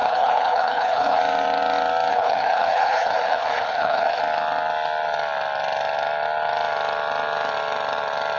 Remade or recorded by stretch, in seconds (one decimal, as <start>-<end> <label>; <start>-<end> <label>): 0.0-1.2 remade; 1.2-2.1 recorded; 2.1-4.2 remade; 4.2-8.4 recorded